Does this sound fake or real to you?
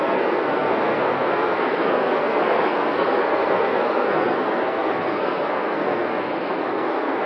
fake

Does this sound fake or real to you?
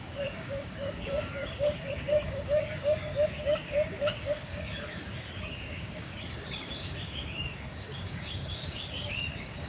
fake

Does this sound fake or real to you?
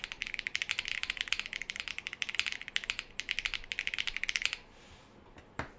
real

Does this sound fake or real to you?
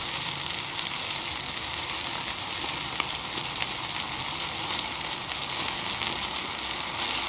real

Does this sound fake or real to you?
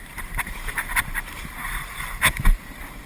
fake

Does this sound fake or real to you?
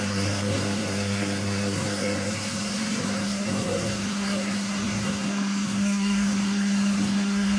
fake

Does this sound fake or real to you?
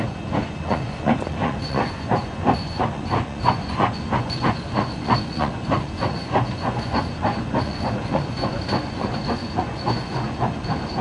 fake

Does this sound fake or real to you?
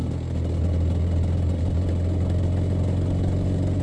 real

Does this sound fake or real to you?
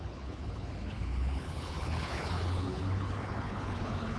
fake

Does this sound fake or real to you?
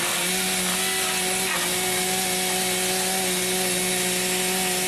real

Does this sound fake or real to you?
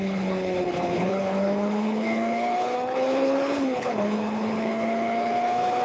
fake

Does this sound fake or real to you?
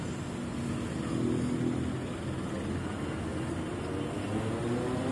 real